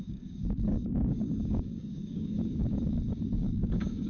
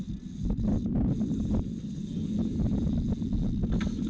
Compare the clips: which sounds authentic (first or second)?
second